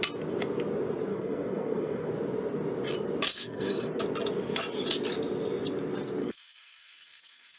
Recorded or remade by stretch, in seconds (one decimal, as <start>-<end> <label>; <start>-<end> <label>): 0.0-1.1 recorded; 1.1-2.1 remade; 2.1-3.3 recorded; 3.3-4.0 remade; 4.0-6.2 recorded; 6.2-7.6 remade

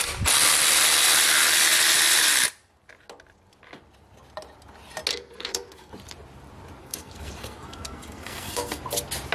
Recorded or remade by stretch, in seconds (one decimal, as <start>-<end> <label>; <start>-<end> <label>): 0.0-5.1 recorded; 5.1-5.9 remade; 5.9-6.8 recorded; 6.8-8.8 remade; 8.8-9.3 recorded

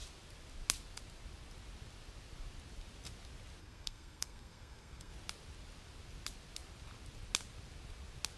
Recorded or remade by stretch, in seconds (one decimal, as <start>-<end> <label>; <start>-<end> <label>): 0.0-3.6 recorded; 3.6-5.1 remade; 5.1-8.4 recorded

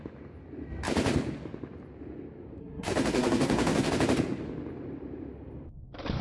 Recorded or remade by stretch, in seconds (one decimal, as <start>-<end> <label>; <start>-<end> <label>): 0.0-2.6 recorded; 2.6-3.9 remade; 3.9-6.2 recorded

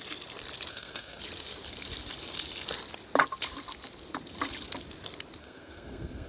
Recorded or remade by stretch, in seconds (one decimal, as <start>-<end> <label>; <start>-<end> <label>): 0.0-0.7 recorded; 0.7-1.2 remade; 1.2-5.4 recorded; 5.4-6.3 remade